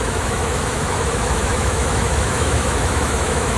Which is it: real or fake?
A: fake